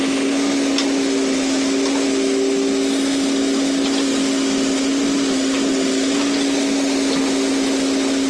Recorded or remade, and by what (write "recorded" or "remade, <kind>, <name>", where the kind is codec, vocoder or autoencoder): recorded